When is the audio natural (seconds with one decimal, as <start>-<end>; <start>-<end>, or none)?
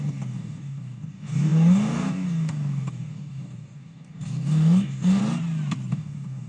5.2-5.9